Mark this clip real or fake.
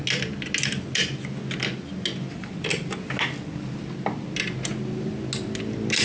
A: real